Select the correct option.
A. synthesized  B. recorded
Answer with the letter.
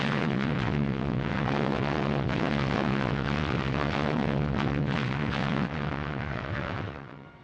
A